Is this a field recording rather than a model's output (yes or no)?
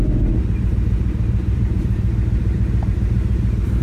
no